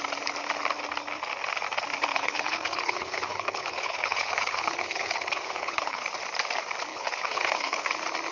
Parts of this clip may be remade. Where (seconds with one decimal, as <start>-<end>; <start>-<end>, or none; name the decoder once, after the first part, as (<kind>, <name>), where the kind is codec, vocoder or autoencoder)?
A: 2.1-6.0 (codec, HILCodec); 6.9-7.9